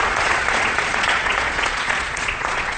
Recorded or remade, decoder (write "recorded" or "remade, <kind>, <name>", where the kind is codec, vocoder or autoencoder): remade, vocoder, Vocos